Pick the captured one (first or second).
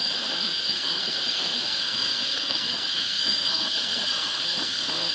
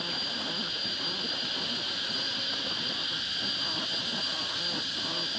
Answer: second